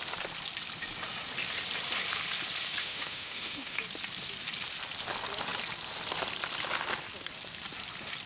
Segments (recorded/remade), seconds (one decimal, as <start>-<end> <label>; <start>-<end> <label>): 0.0-2.8 recorded; 2.8-3.8 remade; 3.8-8.3 recorded